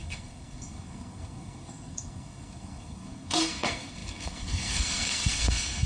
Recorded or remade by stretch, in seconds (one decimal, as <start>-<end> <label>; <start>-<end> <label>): 0.0-5.9 remade

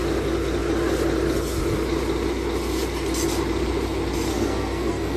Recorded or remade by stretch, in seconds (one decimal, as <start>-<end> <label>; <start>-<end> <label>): 0.0-4.3 recorded; 4.3-5.2 remade

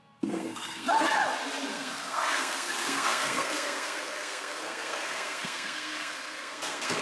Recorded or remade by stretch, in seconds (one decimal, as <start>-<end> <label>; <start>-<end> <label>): 0.0-1.2 remade; 1.2-1.7 recorded; 1.7-7.0 remade

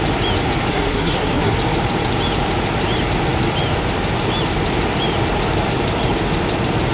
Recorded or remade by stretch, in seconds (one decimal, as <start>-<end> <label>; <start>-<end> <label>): 0.0-0.7 recorded; 0.7-1.5 remade; 1.5-6.9 recorded

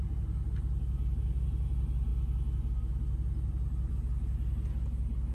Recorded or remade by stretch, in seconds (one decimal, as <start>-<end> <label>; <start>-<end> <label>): 0.0-5.3 recorded

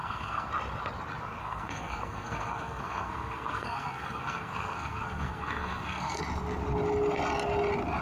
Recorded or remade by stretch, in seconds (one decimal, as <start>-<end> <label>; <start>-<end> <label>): 0.0-0.5 remade; 0.5-1.4 recorded; 1.4-6.2 remade; 6.2-8.0 recorded

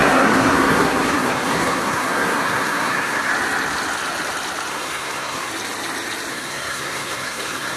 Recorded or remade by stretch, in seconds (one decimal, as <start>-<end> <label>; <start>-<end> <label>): 0.0-3.3 remade; 3.3-4.7 recorded; 4.7-5.5 remade; 5.5-6.3 recorded; 6.3-7.8 remade

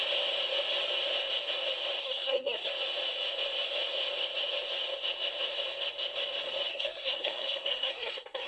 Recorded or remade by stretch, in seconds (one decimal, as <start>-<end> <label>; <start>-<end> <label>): 0.0-2.0 recorded; 2.0-2.7 remade; 2.7-6.7 recorded; 6.7-8.5 remade